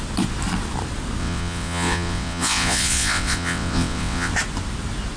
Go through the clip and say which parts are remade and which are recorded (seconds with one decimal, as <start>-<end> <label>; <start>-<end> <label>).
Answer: 0.0-1.2 recorded; 1.2-4.3 remade; 4.3-5.2 recorded